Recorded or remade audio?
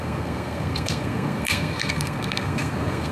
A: remade